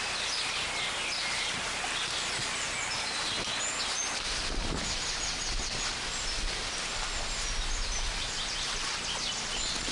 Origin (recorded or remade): recorded